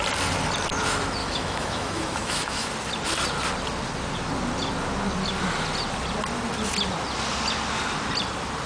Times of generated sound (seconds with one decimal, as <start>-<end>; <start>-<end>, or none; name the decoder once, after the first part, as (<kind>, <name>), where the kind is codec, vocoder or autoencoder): 1.2-2.7 (autoencoder, DAC-VAE)